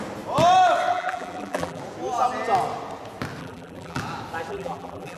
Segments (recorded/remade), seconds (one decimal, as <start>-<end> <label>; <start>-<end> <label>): 0.0-0.9 recorded; 0.9-1.8 remade; 1.8-3.4 recorded; 3.4-4.0 remade; 4.0-4.5 recorded; 4.5-5.2 remade